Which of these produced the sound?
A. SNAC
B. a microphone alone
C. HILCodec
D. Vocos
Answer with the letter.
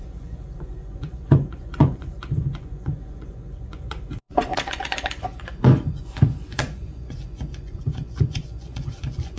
D